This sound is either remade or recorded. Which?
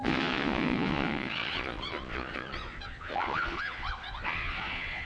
remade